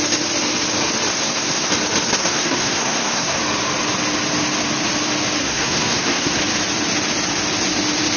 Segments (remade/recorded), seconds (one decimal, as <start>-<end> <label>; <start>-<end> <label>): 0.0-1.1 recorded; 1.1-1.7 remade; 1.7-2.2 recorded; 2.2-3.4 remade; 3.4-5.4 recorded; 5.4-6.4 remade; 6.4-8.2 recorded